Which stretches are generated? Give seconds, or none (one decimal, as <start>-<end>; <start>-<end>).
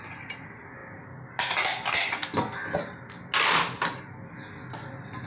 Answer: none